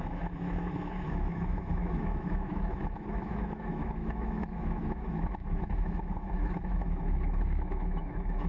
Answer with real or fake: fake